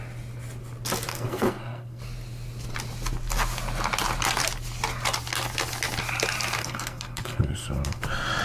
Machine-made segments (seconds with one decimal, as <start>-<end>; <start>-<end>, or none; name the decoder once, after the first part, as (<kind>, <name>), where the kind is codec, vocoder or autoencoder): 1.1-2.0 (codec, SNAC); 6.6-8.0